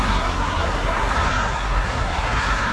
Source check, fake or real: fake